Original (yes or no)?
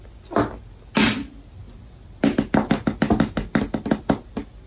yes